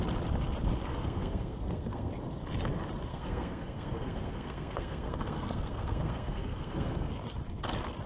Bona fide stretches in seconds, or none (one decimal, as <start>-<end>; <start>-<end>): 0.0-0.9; 2.1-3.1; 7.1-8.1